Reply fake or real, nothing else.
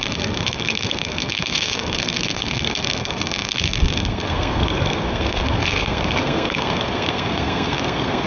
fake